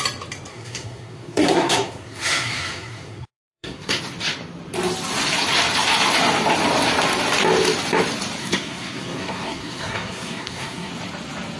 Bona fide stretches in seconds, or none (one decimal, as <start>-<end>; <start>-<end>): 0.0-0.5; 4.0-8.4; 10.9-11.6